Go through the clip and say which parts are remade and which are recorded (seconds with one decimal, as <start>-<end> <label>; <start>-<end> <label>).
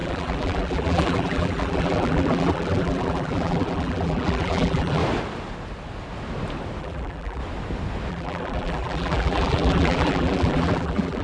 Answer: 0.0-5.0 remade; 5.0-6.8 recorded; 6.8-7.4 remade; 7.4-8.1 recorded; 8.1-11.2 remade